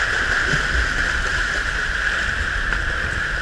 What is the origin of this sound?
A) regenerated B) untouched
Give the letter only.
B